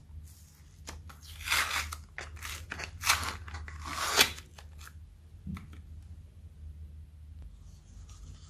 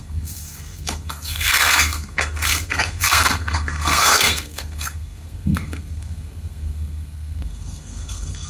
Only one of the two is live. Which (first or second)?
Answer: first